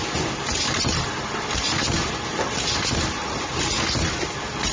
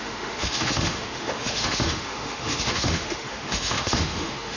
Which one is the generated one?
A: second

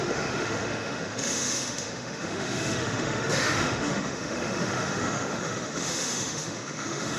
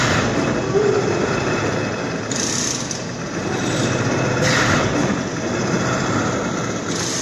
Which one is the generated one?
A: first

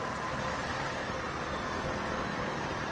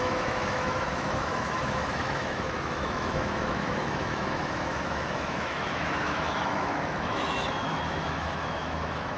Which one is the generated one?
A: second